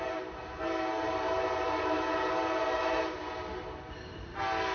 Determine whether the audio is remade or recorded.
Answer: recorded